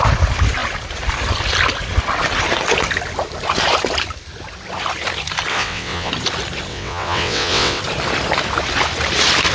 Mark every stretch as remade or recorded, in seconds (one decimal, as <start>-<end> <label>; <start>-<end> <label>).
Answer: 0.0-5.5 recorded; 5.5-6.1 remade; 6.1-6.7 recorded; 6.7-7.8 remade; 7.8-9.5 recorded